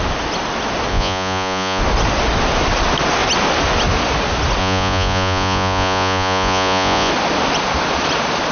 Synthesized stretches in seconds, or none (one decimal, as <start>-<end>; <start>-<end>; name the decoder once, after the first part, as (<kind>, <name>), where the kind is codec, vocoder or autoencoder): 0.9-1.8 (vocoder, Vocos); 4.6-7.1